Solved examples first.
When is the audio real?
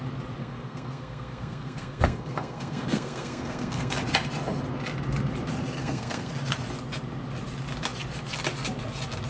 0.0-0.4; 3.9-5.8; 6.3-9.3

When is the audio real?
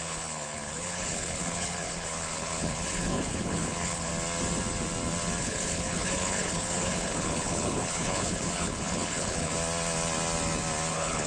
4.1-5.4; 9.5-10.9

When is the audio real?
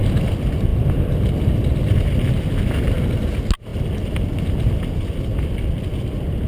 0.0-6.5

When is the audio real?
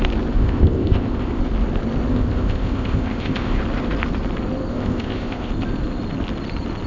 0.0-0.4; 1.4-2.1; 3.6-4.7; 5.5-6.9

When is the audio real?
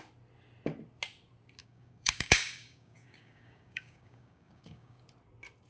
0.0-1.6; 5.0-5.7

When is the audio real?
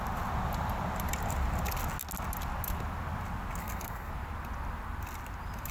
0.0-3.6; 4.1-5.7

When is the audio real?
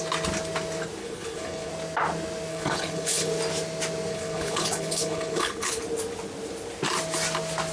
0.0-1.0; 1.7-2.5; 3.3-4.1; 5.8-7.7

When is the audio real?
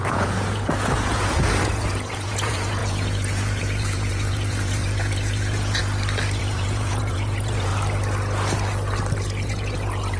5.8-6.4; 7.7-9.4